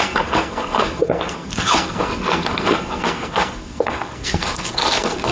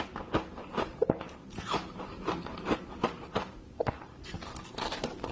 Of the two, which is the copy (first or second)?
first